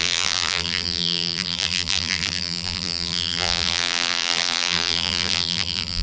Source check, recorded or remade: remade